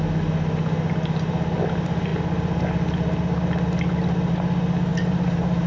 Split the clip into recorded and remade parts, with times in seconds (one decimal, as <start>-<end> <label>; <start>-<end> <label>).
0.0-4.9 recorded; 4.9-5.7 remade